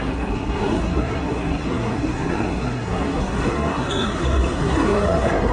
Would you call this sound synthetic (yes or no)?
yes